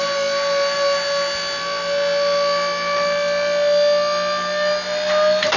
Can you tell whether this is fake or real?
real